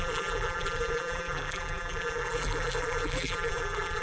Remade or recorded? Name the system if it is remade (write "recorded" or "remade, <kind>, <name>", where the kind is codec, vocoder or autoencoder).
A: remade, vocoder, BigVGAN v2